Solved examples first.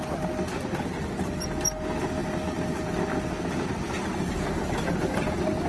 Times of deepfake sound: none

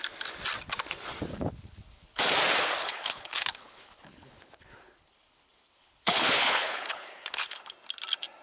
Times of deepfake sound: 1.3-2.2 (codec, HILCodec); 2.8-7.7

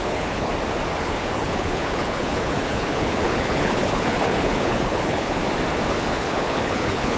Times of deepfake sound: 0.0-0.5 (codec, HILCodec); 1.0-5.4; 5.9-7.2

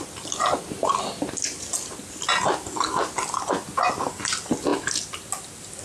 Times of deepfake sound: none

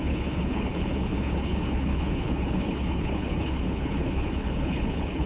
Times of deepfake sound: 0.0-5.3 (codec, HILCodec)

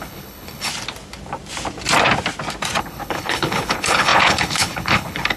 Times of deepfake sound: 0.0-0.7 (codec, HILCodec); 2.8-5.4

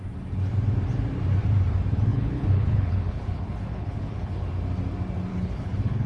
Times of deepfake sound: 2.1-4.5 (codec, HILCodec); 5.3-6.1